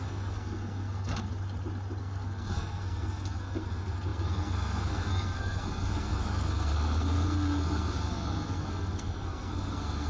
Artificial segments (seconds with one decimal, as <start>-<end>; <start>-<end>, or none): 0.0-1.3; 2.0-10.1